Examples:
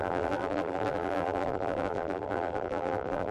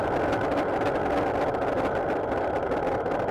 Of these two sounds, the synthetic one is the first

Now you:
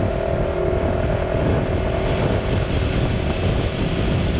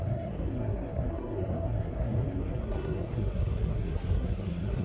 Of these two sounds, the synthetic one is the second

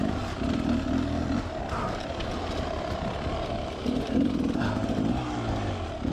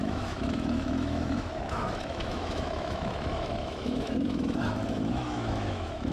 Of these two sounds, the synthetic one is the second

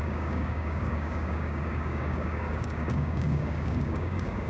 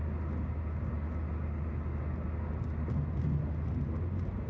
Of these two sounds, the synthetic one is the first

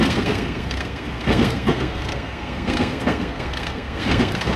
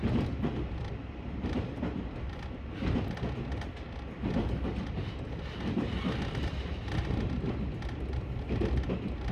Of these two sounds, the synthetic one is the first